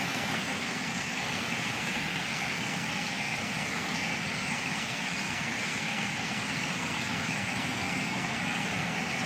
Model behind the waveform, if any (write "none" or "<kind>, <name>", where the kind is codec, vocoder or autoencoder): codec, SNAC